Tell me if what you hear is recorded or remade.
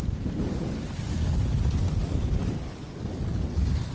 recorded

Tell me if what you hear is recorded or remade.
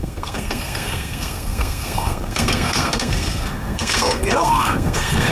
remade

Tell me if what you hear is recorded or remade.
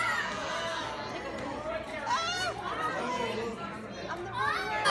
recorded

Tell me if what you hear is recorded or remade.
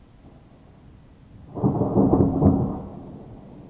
recorded